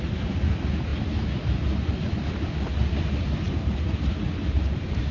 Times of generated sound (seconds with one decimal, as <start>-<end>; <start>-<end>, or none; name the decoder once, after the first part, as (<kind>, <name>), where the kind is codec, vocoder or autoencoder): none